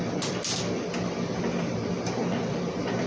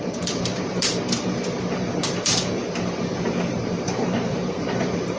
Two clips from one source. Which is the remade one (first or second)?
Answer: second